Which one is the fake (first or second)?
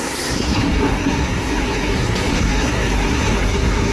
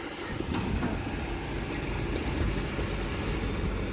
first